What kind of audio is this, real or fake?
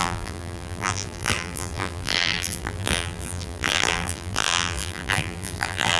fake